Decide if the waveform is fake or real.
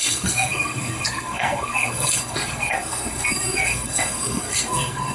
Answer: fake